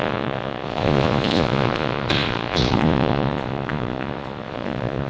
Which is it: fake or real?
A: fake